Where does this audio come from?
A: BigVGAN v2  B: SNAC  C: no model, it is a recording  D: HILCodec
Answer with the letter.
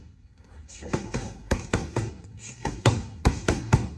B